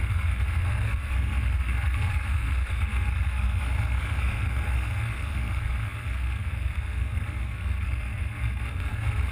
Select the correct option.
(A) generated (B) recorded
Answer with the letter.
A